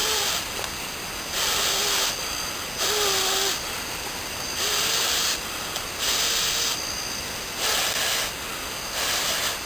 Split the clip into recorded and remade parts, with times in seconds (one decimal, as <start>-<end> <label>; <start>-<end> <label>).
0.0-0.5 remade; 0.5-9.7 recorded